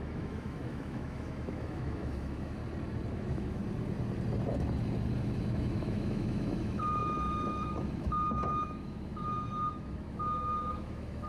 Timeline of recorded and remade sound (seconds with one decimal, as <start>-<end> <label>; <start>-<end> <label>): 0.0-2.6 remade; 2.6-3.1 recorded; 3.1-3.6 remade; 3.6-5.2 recorded; 5.2-11.3 remade